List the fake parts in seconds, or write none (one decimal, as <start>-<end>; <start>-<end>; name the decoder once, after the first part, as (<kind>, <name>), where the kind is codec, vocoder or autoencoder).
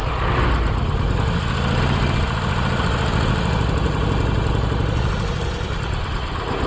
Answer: none